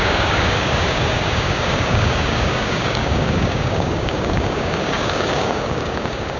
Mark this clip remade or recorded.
remade